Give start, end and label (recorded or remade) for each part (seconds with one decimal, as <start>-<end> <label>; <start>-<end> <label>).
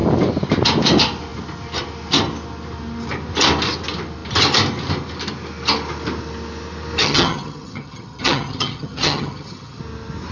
0.0-7.0 recorded; 7.0-9.8 remade; 9.8-10.3 recorded